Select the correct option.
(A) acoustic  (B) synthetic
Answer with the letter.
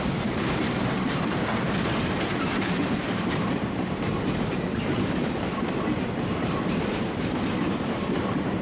B